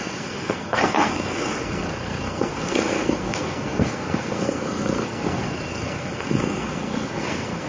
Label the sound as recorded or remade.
remade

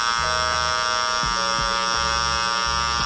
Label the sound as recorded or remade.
recorded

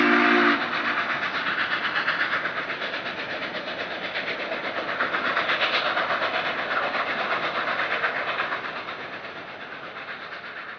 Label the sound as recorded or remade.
recorded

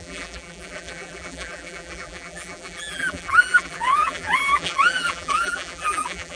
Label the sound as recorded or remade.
remade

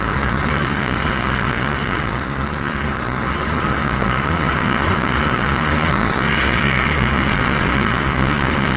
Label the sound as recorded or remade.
remade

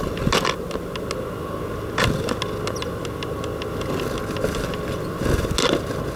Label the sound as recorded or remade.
recorded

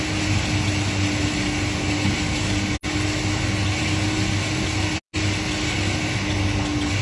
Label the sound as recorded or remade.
recorded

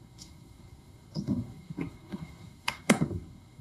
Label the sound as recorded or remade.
remade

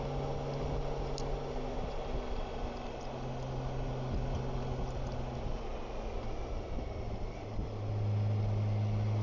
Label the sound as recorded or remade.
recorded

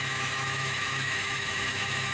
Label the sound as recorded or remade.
remade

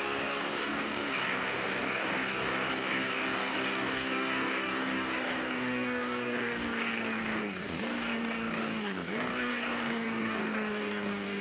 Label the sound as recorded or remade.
remade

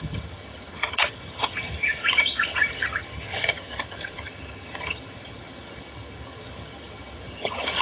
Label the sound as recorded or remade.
remade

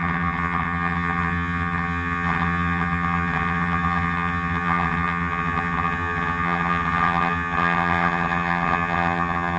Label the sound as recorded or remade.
remade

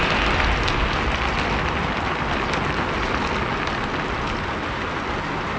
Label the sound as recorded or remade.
recorded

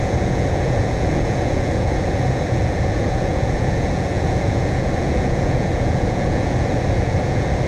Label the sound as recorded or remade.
remade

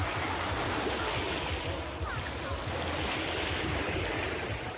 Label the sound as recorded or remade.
recorded